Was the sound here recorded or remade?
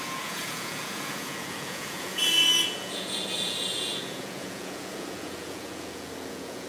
remade